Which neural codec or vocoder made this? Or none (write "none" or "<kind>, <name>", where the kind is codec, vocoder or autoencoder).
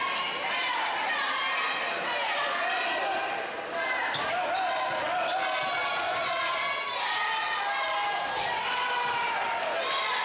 none